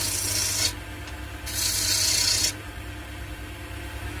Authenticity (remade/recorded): recorded